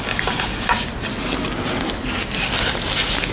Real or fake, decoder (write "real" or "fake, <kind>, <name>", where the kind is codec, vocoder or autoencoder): real